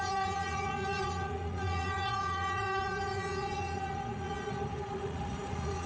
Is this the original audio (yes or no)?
no